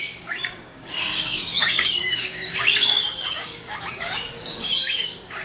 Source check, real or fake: fake